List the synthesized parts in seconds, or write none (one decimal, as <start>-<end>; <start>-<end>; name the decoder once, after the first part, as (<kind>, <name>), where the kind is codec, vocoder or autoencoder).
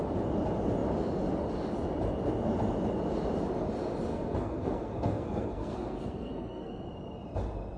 4.1-6.9 (codec, SNAC)